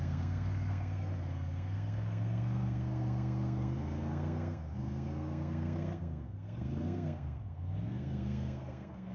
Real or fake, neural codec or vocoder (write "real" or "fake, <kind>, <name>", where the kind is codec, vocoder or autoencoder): fake, codec, SNAC